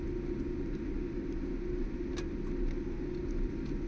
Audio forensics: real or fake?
real